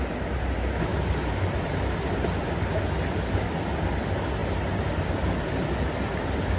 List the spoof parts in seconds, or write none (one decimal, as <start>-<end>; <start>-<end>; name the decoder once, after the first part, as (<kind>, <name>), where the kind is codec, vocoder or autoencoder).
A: none